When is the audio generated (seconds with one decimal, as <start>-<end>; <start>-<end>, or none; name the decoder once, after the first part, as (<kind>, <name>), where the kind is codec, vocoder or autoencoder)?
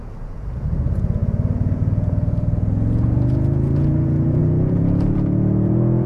0.0-6.1 (vocoder, Vocos)